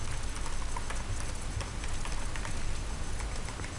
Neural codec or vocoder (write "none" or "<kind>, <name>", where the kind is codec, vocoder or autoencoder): none